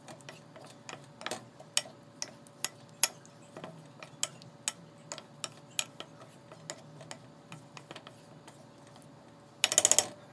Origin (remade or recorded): recorded